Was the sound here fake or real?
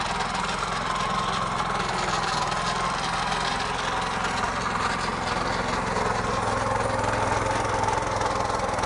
real